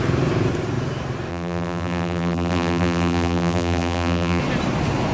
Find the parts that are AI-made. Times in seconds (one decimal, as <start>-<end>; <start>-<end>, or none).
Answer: 1.3-4.4